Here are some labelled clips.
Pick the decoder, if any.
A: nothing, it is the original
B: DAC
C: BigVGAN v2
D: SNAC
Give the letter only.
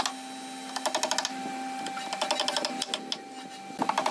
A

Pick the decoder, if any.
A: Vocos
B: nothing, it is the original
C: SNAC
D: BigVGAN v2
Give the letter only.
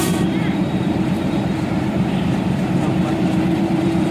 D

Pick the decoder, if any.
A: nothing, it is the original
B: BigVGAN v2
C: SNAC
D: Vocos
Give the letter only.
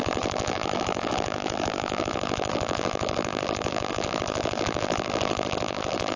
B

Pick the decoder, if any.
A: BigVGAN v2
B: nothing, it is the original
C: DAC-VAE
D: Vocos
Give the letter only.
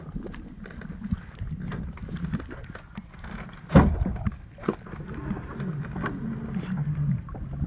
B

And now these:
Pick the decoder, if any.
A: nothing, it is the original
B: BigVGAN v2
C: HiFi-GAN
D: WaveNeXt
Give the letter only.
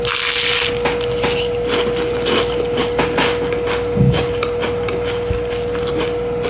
A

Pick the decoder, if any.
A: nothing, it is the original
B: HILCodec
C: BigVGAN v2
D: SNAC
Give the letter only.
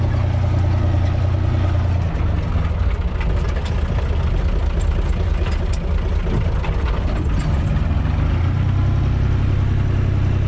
A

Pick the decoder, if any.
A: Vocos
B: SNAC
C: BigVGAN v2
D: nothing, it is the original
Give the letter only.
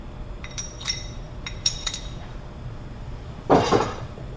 C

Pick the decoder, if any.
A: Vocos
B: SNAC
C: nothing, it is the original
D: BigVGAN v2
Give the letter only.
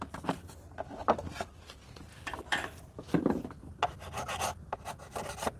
C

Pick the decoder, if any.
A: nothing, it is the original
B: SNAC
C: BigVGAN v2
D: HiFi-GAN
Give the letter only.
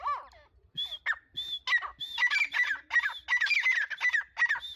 A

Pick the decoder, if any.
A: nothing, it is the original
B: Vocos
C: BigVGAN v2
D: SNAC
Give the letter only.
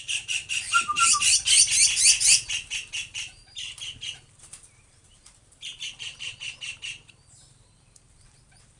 C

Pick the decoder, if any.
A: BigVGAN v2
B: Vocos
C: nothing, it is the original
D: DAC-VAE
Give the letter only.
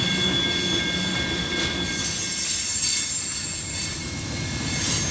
C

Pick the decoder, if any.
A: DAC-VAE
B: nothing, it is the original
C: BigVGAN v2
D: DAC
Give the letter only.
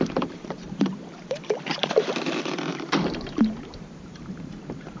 C